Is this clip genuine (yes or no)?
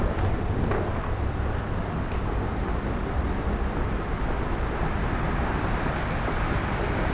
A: no